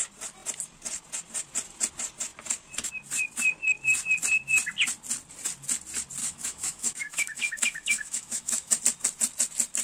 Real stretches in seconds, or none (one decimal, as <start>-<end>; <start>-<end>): 0.0-6.2; 8.8-9.8